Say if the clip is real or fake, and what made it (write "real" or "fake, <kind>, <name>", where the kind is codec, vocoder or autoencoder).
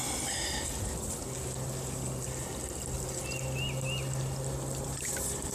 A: real